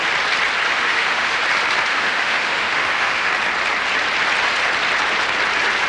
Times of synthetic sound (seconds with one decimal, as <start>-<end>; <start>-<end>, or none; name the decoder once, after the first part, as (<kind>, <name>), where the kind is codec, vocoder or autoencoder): 0.7-1.4 (autoencoder, DAC-VAE); 1.9-3.3